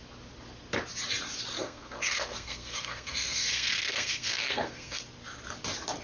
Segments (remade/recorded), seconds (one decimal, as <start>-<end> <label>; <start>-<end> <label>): 0.0-1.6 recorded; 1.6-5.0 remade; 5.0-6.0 recorded